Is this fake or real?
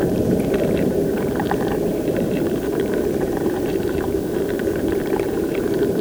fake